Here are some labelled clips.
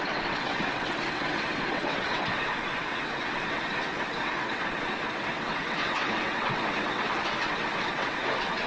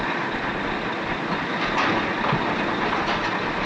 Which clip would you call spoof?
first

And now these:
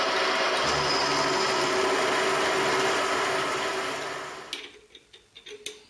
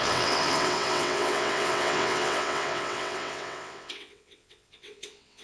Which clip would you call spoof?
second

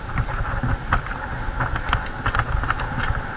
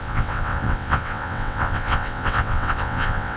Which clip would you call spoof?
second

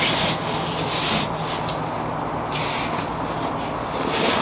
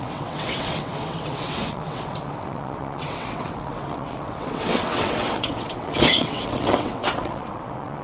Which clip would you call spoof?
second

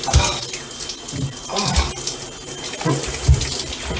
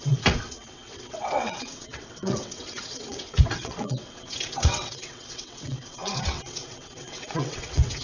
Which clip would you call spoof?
second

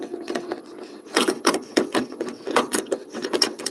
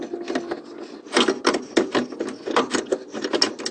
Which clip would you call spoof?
first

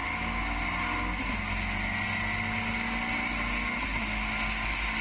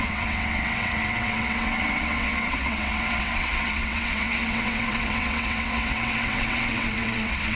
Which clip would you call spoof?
second